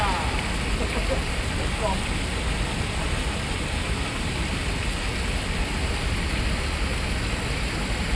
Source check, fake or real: real